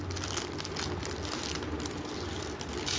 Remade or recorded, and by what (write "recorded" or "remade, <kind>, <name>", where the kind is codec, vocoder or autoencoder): recorded